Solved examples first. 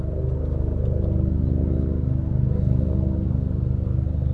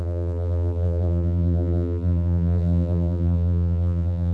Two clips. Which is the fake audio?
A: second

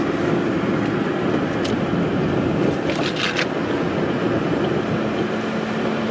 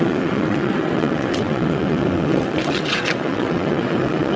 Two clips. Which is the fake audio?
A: second